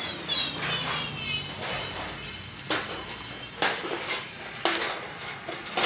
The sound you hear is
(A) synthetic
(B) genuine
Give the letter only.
B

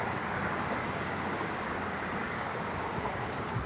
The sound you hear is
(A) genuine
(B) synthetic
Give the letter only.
B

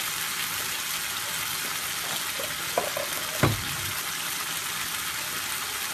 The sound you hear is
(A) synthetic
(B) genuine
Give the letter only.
B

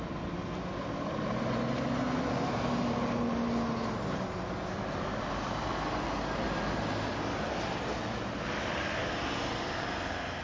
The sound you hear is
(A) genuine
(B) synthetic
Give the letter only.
A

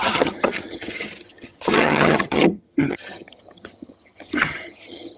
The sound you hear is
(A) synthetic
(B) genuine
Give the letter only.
A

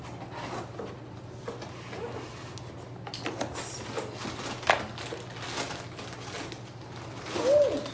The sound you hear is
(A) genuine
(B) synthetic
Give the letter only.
A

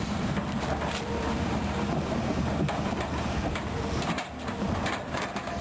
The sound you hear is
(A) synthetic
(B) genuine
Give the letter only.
A